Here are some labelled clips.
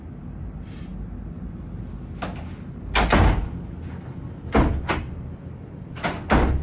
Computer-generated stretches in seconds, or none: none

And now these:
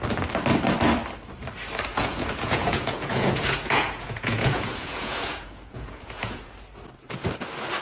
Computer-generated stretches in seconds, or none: 1.9-6.5 (vocoder, Vocos)

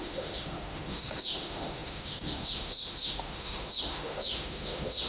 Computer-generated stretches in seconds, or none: 0.0-5.1 (autoencoder, DAC-VAE)

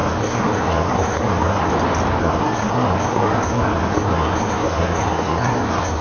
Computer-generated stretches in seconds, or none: 0.0-1.7 (codec, SNAC); 2.2-6.0

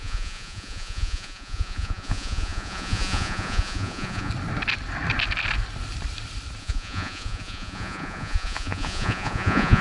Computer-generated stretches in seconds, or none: 0.0-4.3 (vocoder, Vocos); 6.6-9.8

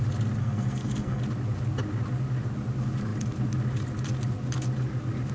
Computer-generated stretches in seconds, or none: 0.4-1.2 (codec, SNAC)